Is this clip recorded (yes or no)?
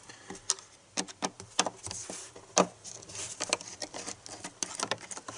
yes